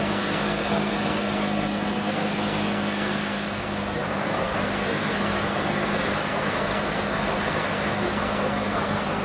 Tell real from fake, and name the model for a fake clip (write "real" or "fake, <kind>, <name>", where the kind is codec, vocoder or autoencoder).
fake, codec, SNAC